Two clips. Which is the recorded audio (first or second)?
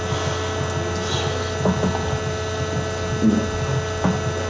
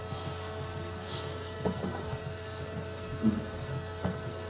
first